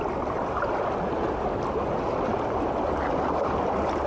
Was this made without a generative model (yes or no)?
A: yes